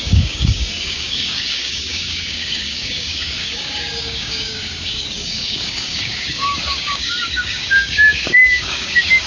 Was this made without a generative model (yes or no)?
no